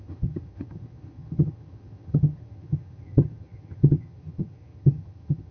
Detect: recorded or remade remade